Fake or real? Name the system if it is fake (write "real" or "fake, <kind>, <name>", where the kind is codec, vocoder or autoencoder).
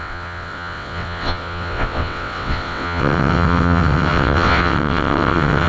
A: fake, vocoder, WaveNeXt